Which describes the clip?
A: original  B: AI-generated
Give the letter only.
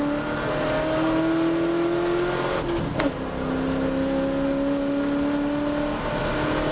A